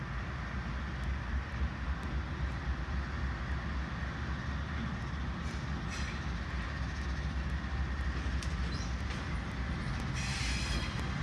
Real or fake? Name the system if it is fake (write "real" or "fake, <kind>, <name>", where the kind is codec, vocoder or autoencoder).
real